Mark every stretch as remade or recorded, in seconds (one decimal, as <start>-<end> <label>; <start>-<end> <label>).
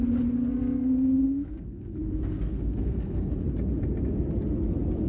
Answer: 0.0-0.4 recorded; 0.4-3.3 remade; 3.3-5.1 recorded